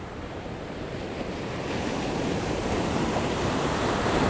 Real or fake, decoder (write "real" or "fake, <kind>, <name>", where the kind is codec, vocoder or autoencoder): fake, vocoder, BigVGAN v2